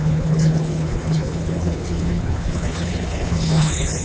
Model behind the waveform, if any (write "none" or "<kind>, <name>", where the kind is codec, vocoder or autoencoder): codec, HILCodec